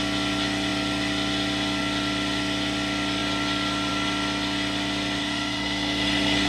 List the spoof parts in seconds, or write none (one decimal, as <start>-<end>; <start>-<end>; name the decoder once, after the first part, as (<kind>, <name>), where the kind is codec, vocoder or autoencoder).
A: 5.2-6.5 (codec, SNAC)